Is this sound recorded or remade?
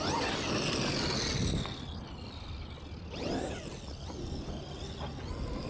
recorded